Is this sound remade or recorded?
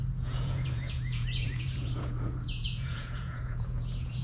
remade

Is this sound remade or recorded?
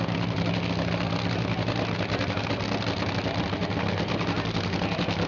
remade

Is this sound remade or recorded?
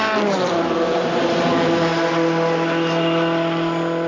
recorded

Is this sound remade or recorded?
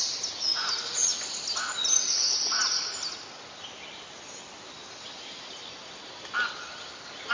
recorded